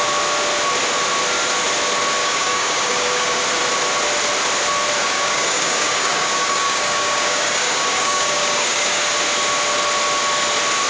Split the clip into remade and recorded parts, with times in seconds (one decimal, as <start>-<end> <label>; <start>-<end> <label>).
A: 0.0-2.2 recorded; 2.2-3.4 remade; 3.4-5.0 recorded; 5.0-9.1 remade; 9.1-10.9 recorded